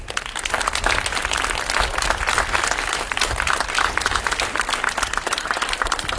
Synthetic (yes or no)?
no